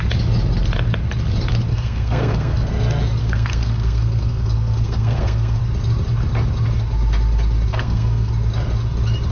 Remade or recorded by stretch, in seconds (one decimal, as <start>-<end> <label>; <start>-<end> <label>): 0.0-1.7 recorded; 1.7-2.7 remade; 2.7-3.2 recorded; 3.2-5.6 remade; 5.6-7.7 recorded; 7.7-8.3 remade; 8.3-9.3 recorded